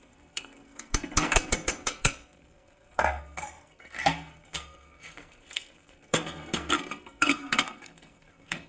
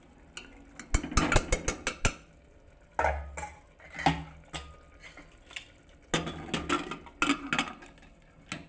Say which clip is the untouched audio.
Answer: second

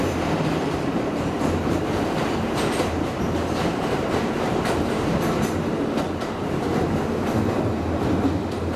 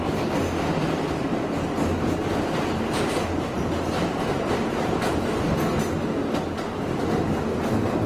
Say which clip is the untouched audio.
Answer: second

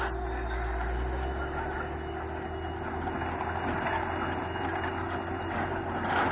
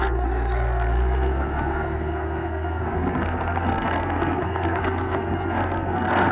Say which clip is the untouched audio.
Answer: first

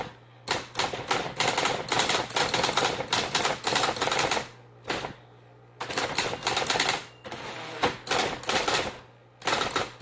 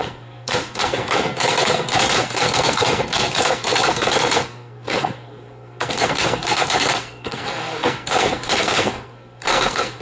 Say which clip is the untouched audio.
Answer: first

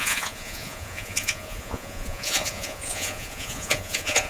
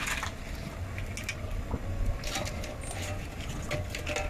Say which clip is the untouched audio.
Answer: second